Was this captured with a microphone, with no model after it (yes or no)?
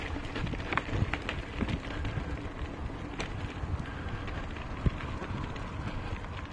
yes